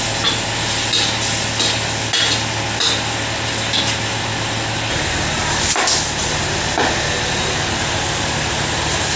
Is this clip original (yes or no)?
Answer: yes